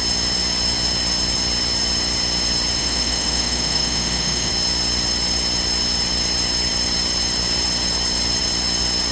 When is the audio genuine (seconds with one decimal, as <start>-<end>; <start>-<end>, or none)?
0.0-2.8; 4.5-9.1